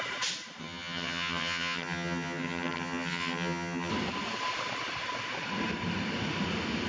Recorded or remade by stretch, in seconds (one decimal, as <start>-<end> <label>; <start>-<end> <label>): 0.0-0.6 recorded; 0.6-3.9 remade; 3.9-6.9 recorded